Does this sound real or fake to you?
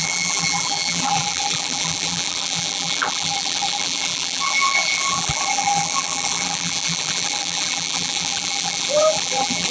fake